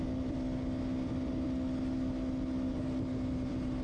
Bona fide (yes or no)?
yes